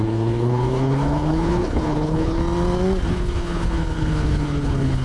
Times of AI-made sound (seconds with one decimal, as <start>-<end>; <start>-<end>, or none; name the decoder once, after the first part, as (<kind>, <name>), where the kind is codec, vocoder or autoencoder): 0.0-2.4 (codec, HILCodec); 3.1-5.0